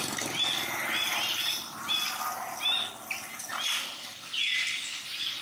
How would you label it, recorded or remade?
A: recorded